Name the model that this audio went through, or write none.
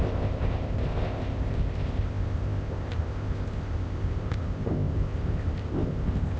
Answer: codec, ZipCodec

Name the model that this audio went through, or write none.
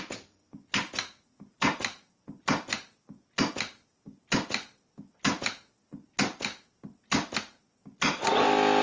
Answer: none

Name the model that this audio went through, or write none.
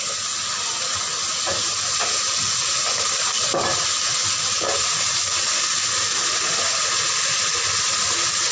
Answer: none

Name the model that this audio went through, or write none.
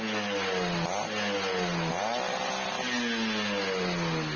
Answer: none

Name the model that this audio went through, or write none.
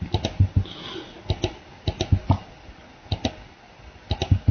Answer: none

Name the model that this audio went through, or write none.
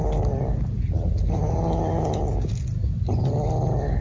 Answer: none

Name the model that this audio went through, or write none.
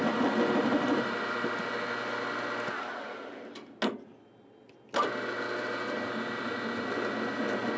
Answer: none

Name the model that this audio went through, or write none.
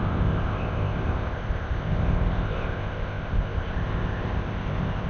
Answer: codec, ZipCodec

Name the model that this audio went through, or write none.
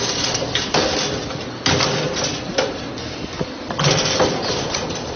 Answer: none